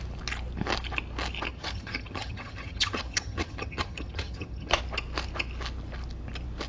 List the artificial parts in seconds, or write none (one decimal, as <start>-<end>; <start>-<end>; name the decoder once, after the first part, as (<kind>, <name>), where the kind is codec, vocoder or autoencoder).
1.5-4.8 (vocoder, HiFi-GAN)